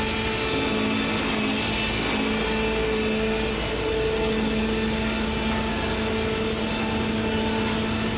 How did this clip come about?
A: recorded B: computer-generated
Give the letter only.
A